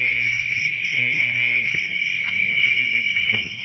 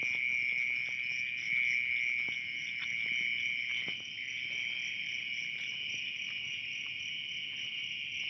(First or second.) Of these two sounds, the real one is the second